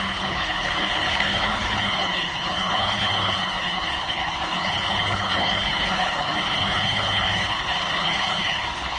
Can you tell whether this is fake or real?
fake